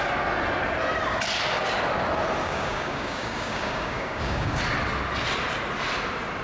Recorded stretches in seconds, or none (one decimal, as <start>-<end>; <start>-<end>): 0.0-2.4; 4.6-6.4